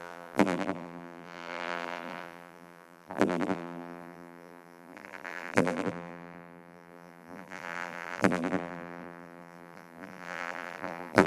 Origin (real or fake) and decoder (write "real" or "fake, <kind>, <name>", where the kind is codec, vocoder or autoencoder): fake, vocoder, BigVGAN v2